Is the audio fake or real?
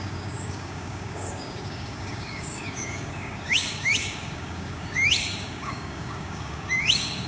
fake